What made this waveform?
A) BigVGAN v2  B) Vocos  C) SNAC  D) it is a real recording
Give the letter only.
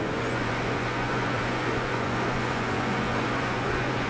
B